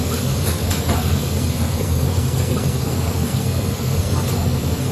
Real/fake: fake